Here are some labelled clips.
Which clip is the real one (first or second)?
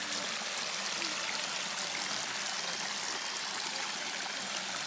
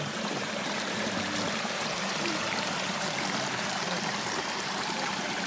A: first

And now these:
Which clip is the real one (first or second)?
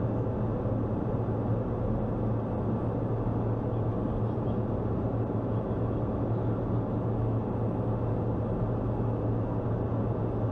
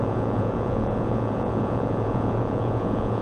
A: first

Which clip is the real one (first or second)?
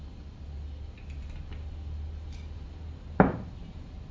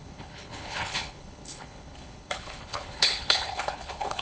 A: first